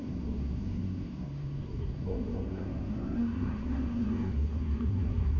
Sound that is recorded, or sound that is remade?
remade